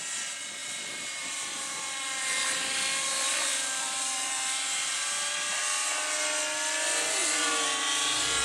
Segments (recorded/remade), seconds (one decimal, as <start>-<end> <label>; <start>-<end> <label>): 0.0-0.6 recorded; 0.6-5.6 remade; 5.6-8.4 recorded